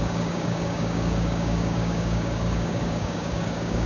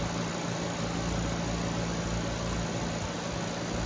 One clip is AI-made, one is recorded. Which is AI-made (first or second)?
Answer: first